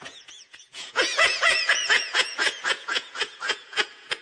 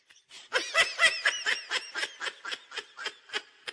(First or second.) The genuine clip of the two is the second